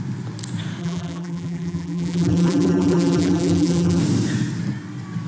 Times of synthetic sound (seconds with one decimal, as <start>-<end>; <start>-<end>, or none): 0.8-4.0